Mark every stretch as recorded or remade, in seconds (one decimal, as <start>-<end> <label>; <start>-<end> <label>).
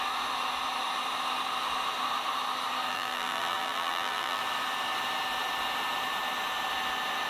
0.0-2.9 recorded; 2.9-4.4 remade; 4.4-7.3 recorded